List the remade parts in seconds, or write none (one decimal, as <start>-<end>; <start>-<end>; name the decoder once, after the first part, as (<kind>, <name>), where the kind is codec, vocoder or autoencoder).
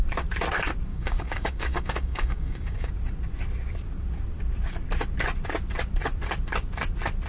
0.9-2.9 (codec, DAC)